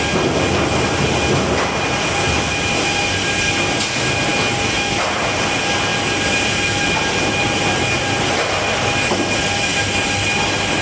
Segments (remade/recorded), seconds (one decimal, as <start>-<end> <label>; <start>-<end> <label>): 0.0-5.9 recorded; 5.9-6.7 remade; 6.7-9.7 recorded; 9.7-10.2 remade; 10.2-10.8 recorded

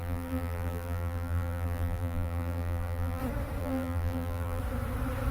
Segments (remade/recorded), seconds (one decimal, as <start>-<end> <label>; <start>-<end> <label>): 0.0-3.2 remade; 3.2-3.6 recorded; 3.6-4.6 remade; 4.6-5.3 recorded

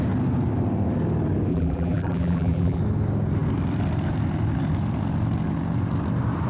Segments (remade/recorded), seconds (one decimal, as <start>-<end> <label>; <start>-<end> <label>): 0.0-1.5 recorded; 1.5-2.8 remade; 2.8-6.5 recorded

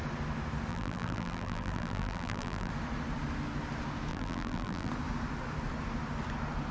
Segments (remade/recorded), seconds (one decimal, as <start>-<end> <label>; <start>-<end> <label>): 0.0-0.7 recorded; 0.7-2.7 remade; 2.7-4.1 recorded; 4.1-4.9 remade; 4.9-6.7 recorded

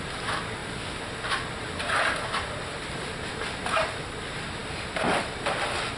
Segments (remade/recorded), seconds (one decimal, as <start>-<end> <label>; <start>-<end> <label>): 0.0-6.0 recorded